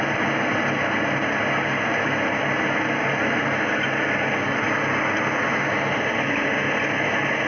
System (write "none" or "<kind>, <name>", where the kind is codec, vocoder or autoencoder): none